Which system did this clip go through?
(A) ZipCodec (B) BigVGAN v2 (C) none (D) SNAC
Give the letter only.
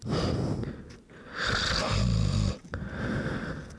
C